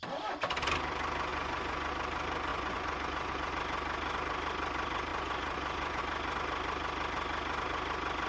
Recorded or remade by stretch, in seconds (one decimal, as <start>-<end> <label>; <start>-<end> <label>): 0.0-1.3 recorded; 1.3-1.9 remade; 1.9-2.5 recorded; 2.5-3.5 remade; 3.5-5.1 recorded; 5.1-6.0 remade; 6.0-8.3 recorded